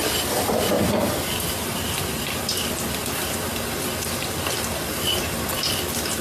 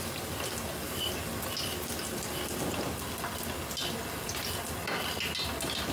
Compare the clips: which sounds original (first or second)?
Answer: second